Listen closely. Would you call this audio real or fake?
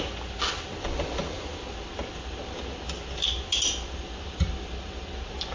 real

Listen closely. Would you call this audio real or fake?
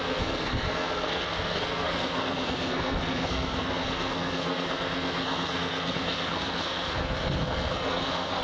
fake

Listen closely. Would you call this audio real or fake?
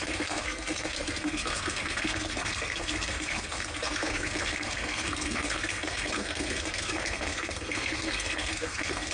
fake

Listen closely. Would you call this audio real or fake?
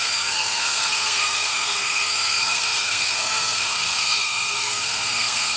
fake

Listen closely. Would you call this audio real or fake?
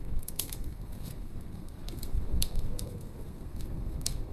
fake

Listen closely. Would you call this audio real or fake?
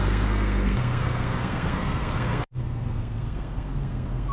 fake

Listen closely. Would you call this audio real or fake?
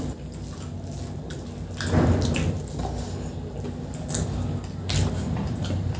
real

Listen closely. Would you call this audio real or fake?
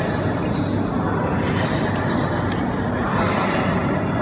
real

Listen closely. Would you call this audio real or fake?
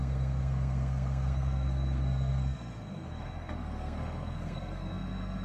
fake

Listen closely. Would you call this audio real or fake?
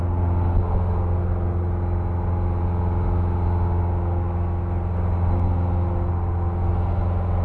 real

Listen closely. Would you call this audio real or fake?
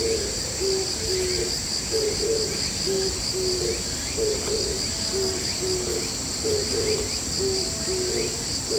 real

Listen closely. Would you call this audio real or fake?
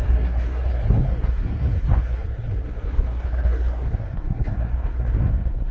fake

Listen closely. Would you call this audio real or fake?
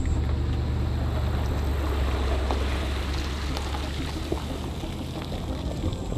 real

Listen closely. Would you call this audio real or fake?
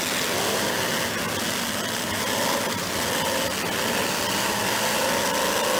real